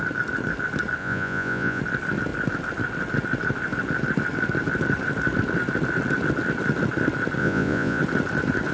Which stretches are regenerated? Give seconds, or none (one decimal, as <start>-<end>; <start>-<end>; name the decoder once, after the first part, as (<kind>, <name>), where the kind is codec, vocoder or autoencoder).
1.0-1.8 (vocoder, Vocos); 7.4-8.0